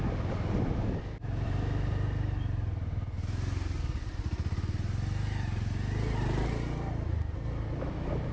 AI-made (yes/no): no